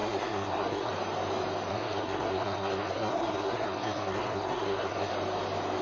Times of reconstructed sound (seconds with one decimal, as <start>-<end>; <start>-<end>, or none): 0.0-0.9; 1.7-5.1